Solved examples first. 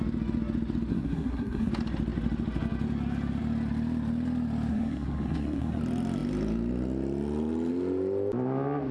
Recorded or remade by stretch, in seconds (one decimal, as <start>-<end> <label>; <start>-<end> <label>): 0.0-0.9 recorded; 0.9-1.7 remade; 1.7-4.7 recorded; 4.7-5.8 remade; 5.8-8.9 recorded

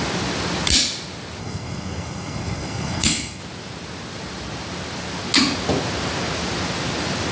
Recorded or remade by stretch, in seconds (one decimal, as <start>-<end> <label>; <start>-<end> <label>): 0.0-1.4 recorded; 1.4-3.4 remade; 3.4-7.3 recorded

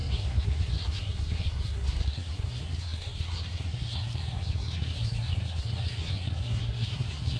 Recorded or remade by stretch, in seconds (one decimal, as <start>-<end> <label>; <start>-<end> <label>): 0.0-7.4 remade

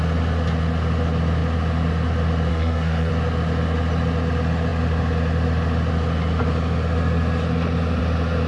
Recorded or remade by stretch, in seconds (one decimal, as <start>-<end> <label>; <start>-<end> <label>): 0.0-2.5 recorded; 2.5-3.1 remade; 3.1-8.5 recorded

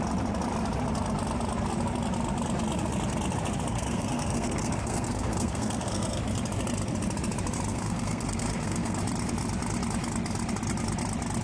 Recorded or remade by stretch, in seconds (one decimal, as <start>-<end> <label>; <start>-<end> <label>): 0.0-3.7 recorded; 3.7-6.2 remade; 6.2-7.7 recorded; 7.7-9.0 remade; 9.0-11.4 recorded

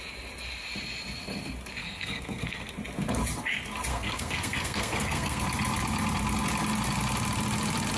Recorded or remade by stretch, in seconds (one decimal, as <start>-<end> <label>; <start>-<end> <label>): 0.0-1.8 recorded; 1.8-2.7 remade; 2.7-3.9 recorded; 3.9-5.4 remade; 5.4-8.0 recorded